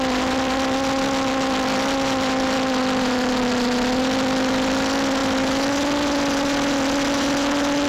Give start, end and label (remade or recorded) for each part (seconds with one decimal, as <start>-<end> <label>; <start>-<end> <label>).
0.0-7.9 recorded